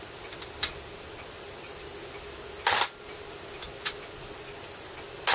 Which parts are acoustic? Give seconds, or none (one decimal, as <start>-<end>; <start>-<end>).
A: 0.0-5.3